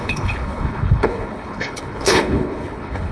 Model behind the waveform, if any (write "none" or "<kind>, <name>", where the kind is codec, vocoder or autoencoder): codec, HILCodec